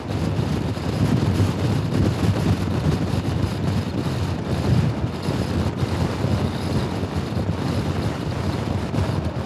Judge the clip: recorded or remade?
recorded